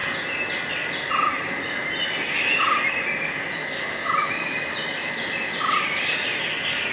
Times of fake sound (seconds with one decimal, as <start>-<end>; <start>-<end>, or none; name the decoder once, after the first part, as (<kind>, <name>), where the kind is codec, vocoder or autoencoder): none